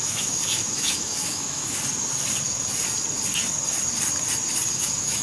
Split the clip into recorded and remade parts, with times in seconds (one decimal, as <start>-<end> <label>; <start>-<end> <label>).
0.0-1.6 remade; 1.6-4.7 recorded; 4.7-5.2 remade